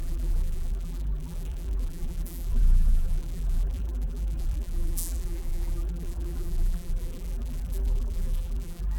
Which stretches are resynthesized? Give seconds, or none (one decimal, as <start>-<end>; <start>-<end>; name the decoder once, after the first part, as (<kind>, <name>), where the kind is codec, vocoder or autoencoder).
0.0-9.0 (vocoder, BigVGAN v2)